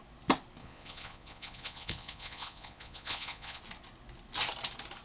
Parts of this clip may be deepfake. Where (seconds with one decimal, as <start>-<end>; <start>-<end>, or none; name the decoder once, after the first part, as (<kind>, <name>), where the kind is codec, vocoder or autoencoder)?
0.6-3.6 (vocoder, Vocos)